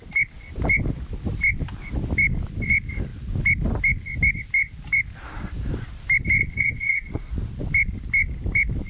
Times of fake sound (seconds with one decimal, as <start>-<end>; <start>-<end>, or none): 6.4-7.3